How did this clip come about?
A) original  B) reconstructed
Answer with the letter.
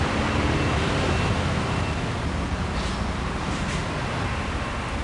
A